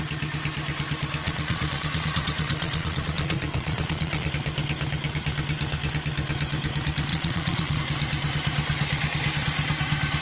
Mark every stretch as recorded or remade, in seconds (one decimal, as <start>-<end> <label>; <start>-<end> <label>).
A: 0.0-1.2 recorded; 1.2-4.3 remade; 4.3-7.1 recorded; 7.1-7.8 remade; 7.8-10.2 recorded

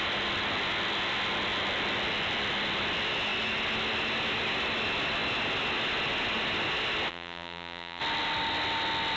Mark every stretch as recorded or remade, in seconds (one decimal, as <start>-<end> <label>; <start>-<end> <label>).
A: 0.0-7.1 recorded; 7.1-8.0 remade; 8.0-9.2 recorded

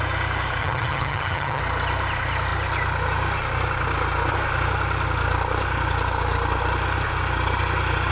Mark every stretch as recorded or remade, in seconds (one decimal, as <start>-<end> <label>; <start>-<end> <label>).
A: 0.0-0.6 recorded; 0.6-1.6 remade; 1.6-8.1 recorded

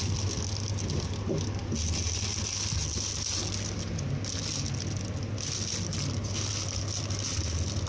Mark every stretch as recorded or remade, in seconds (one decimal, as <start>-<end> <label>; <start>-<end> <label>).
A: 0.0-7.9 recorded

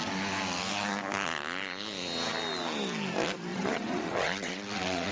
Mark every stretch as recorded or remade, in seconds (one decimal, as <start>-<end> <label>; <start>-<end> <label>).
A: 0.0-3.5 recorded; 3.5-5.1 remade

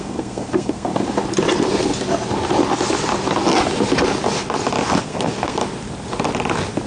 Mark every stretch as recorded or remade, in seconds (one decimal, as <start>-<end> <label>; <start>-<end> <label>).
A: 0.0-0.9 remade; 0.9-5.0 recorded; 5.0-5.6 remade; 5.6-6.9 recorded

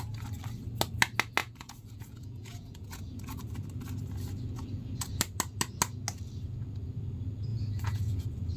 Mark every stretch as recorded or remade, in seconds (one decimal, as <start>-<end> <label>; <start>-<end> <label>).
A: 0.0-1.4 recorded; 1.4-2.9 remade; 2.9-7.5 recorded; 7.5-8.2 remade; 8.2-8.6 recorded